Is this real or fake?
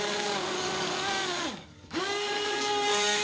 fake